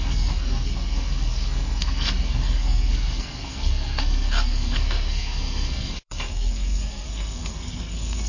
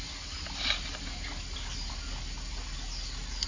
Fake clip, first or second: first